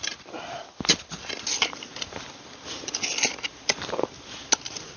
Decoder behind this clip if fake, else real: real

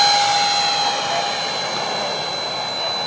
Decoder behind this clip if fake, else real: real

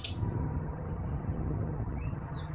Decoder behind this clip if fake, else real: fake, vocoder, HiFi-GAN